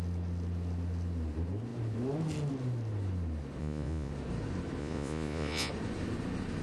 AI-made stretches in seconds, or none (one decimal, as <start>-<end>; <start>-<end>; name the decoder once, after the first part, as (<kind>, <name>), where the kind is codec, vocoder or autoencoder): 3.6-4.1 (vocoder, Vocos); 4.8-5.7